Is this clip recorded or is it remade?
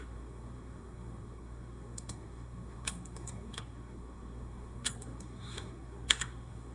remade